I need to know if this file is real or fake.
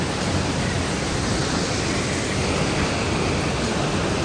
real